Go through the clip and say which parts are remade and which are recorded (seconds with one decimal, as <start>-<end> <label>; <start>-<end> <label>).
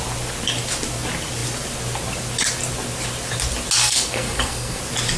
0.0-3.8 recorded; 3.8-4.8 remade; 4.8-5.2 recorded